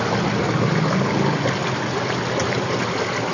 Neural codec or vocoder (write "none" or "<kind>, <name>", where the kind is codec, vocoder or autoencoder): none